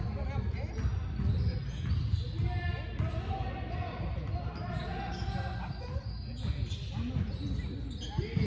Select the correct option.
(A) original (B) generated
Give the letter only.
A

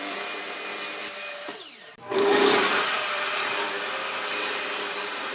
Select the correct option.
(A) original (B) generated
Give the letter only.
B